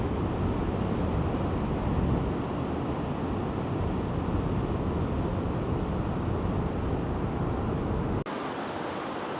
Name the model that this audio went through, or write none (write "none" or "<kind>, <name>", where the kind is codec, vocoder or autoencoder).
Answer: none